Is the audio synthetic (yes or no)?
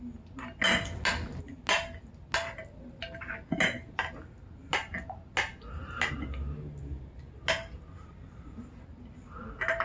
no